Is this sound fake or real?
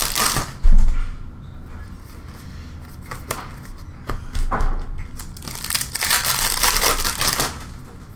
real